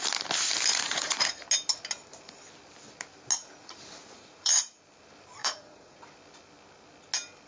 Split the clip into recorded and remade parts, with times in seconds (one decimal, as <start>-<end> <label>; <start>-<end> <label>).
0.0-0.7 recorded; 0.7-1.4 remade; 1.4-4.0 recorded; 4.0-4.5 remade; 4.5-5.4 recorded; 5.4-6.0 remade; 6.0-7.5 recorded